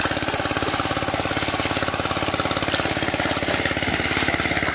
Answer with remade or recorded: recorded